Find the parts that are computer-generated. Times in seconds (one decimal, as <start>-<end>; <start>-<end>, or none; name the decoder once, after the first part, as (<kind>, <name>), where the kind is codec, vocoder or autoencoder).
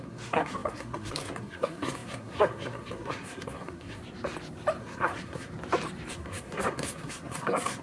0.0-4.0 (codec, SNAC); 4.8-5.5; 6.1-7.8